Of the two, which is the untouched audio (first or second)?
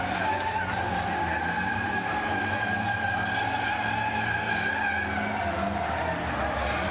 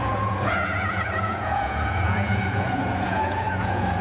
first